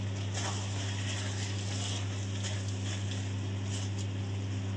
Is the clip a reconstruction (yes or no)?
no